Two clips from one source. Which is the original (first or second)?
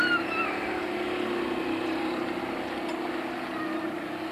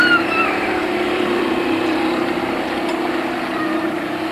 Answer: first